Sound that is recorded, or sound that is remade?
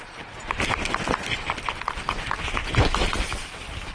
recorded